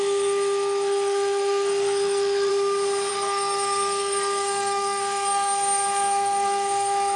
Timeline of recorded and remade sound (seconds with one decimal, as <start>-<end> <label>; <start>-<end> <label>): 0.0-2.5 remade; 2.5-3.1 recorded; 3.1-7.2 remade